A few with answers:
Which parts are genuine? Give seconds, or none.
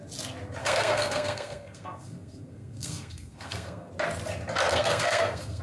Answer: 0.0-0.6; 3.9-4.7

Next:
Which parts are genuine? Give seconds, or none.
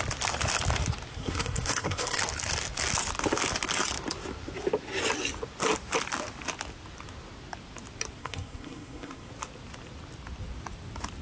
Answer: 0.0-1.1; 2.2-8.2; 9.3-11.2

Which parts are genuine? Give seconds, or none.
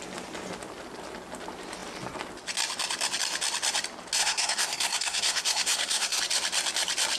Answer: 0.0-4.2; 6.2-7.2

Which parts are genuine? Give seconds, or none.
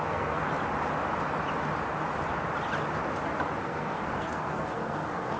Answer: 0.4-3.6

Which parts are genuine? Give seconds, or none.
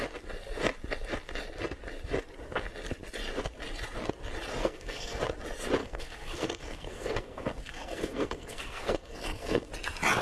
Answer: 0.0-4.6; 5.2-5.8; 9.7-10.2